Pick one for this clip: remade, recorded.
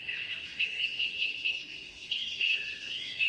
remade